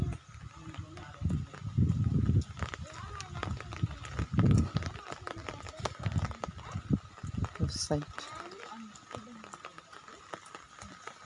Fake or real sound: real